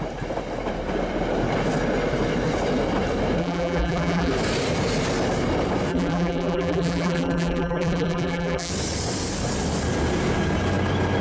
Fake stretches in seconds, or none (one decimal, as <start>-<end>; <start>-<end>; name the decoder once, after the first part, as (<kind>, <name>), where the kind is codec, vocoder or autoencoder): 3.4-4.3 (vocoder, BigVGAN v2); 5.9-8.7

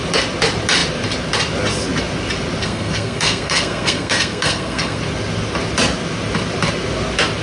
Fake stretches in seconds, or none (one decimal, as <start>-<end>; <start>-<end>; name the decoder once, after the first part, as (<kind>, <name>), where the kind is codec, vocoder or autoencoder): 2.6-5.0 (codec, SNAC)